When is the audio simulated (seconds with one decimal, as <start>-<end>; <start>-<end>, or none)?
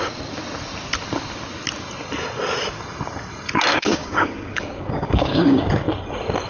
3.7-5.7